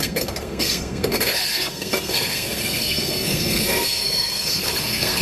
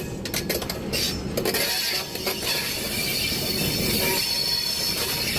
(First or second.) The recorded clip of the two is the second